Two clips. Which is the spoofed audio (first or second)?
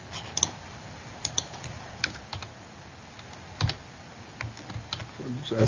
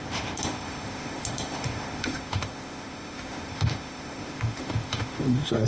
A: second